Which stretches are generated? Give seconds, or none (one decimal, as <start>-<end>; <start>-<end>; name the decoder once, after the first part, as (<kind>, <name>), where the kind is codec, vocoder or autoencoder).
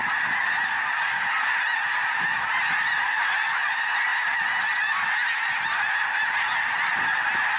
none